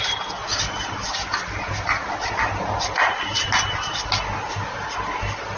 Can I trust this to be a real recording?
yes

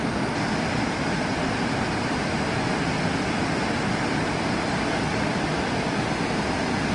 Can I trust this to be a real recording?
yes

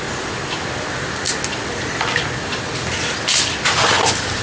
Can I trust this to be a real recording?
yes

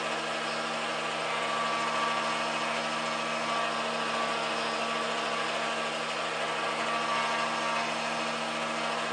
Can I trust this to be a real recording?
yes